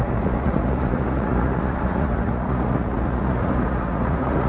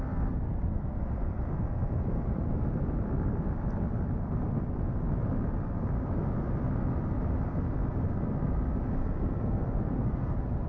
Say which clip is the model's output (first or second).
first